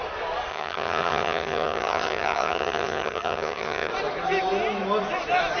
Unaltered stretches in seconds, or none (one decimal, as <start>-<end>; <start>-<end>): 0.0-0.5; 3.9-5.6